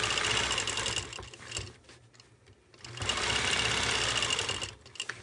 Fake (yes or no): no